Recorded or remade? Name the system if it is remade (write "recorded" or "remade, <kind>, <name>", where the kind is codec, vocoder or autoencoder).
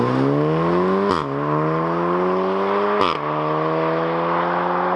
recorded